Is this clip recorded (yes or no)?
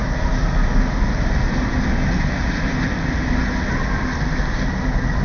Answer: yes